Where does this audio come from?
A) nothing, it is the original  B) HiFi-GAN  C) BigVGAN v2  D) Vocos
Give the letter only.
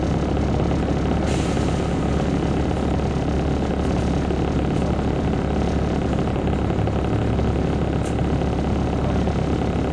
A